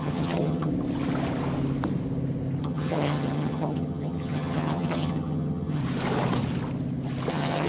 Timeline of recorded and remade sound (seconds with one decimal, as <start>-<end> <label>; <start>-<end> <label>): 0.0-0.7 remade; 0.7-2.6 recorded; 2.6-5.8 remade; 5.8-7.3 recorded; 7.3-7.7 remade